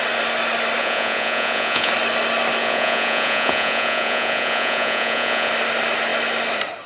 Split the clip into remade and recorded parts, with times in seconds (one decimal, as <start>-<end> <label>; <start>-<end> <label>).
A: 0.0-0.8 recorded; 0.8-1.9 remade; 1.9-2.6 recorded; 2.6-5.5 remade; 5.5-6.9 recorded